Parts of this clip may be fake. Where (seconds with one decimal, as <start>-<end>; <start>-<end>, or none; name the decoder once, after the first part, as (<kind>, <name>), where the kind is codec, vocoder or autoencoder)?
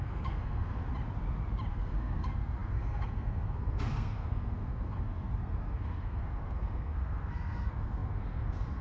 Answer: 0.0-0.8 (codec, SNAC); 1.7-8.8